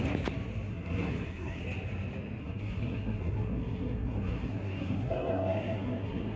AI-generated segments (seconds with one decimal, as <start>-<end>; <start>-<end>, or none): 0.7-1.6; 2.4-6.4